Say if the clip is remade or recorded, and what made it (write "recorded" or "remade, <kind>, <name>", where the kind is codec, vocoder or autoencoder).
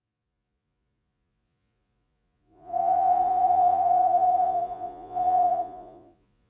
remade, vocoder, Vocos